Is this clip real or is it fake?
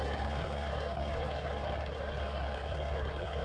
fake